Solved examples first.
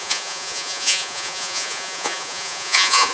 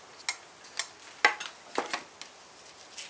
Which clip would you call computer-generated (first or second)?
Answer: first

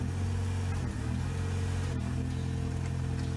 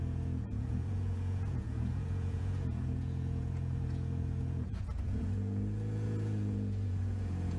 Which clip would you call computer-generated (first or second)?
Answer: second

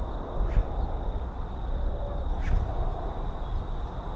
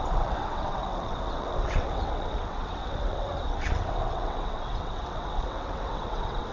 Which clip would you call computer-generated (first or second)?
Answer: second